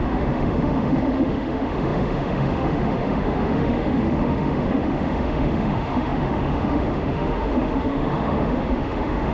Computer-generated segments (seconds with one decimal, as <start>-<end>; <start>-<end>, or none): 0.0-9.3